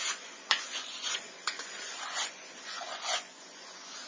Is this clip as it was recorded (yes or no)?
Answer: no